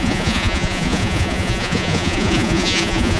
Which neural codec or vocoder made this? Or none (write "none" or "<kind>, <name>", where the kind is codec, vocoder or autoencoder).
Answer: vocoder, Vocos